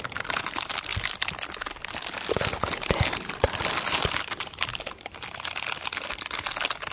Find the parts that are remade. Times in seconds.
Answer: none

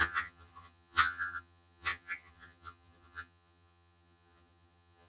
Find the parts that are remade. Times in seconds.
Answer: 0.0-5.1

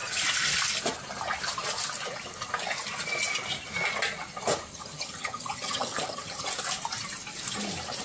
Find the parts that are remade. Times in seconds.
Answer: 4.7-6.5

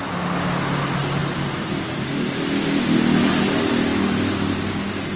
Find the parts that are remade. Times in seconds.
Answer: none

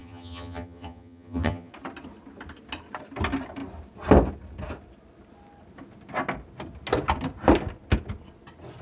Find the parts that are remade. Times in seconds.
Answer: 0.0-1.7

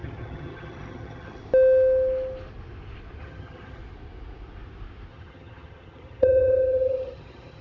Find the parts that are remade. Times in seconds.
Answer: 0.0-1.4; 3.2-3.8; 5.1-7.6